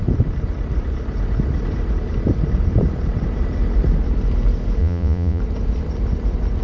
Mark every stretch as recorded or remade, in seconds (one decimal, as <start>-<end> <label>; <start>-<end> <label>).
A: 0.0-4.8 recorded; 4.8-5.4 remade; 5.4-6.6 recorded